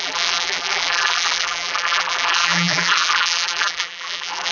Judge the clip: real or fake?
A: fake